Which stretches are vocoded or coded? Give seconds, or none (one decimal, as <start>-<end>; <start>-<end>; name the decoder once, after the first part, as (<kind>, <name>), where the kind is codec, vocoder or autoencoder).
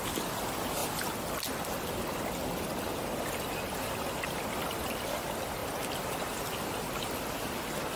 none